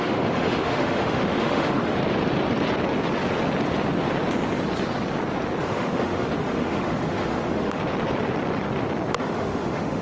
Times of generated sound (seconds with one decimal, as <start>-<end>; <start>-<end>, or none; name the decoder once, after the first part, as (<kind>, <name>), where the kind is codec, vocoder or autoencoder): 0.0-2.0 (autoencoder, DAC-VAE); 5.6-7.8; 9.2-10.0